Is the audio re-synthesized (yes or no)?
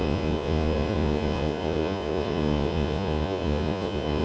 yes